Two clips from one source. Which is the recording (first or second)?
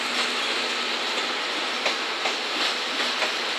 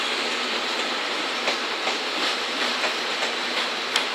first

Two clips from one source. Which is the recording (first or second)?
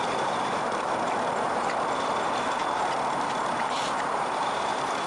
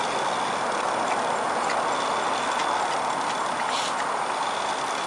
second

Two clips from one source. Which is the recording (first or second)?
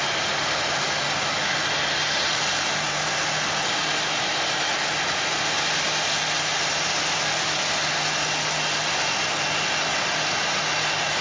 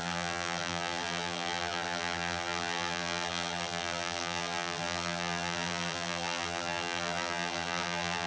first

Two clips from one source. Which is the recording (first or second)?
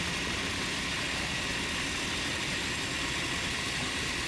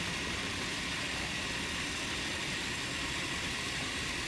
first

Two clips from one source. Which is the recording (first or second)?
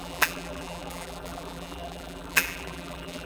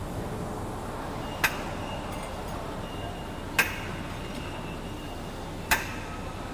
second